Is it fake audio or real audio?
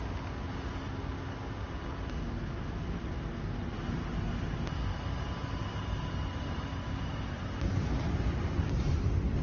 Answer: real